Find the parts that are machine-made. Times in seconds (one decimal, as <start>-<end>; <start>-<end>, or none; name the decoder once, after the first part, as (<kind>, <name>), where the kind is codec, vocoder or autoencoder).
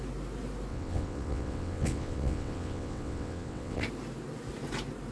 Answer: 0.7-3.8 (vocoder, WaveNeXt)